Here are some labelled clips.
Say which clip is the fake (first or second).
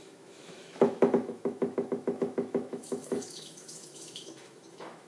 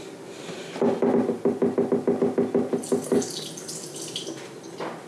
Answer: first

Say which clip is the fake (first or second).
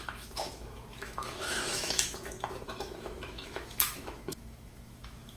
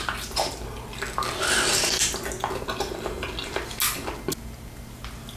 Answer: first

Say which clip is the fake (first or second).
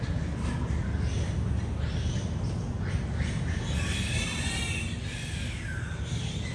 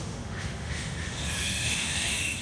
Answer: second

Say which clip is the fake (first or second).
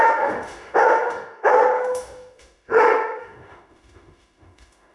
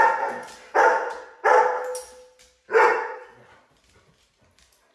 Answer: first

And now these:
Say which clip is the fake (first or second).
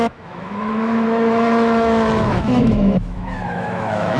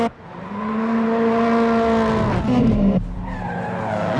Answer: first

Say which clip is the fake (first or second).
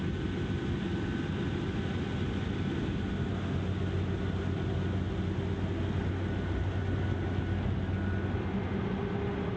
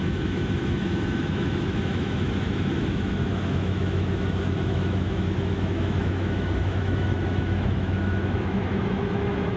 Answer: second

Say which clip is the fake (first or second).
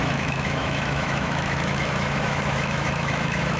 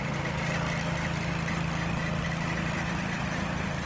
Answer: first